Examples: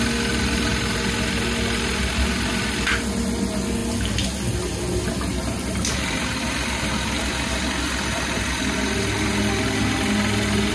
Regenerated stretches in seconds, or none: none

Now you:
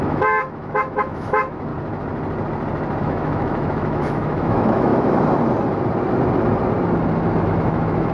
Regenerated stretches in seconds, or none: 0.0-1.7 (autoencoder, DAC-VAE); 3.0-4.9; 7.4-8.1

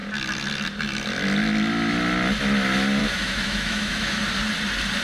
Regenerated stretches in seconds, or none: 3.0-4.2 (autoencoder, DAC-VAE)

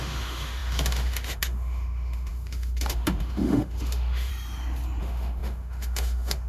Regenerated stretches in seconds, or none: 0.0-4.3 (autoencoder, DAC-VAE); 5.0-6.5

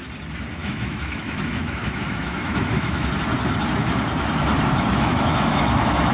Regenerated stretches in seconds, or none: 0.6-3.1 (autoencoder, DAC-VAE); 4.9-6.1